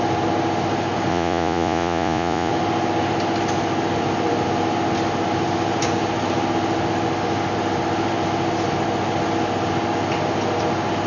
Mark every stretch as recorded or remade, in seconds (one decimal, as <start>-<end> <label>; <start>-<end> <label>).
0.0-1.1 recorded; 1.1-2.5 remade; 2.5-11.1 recorded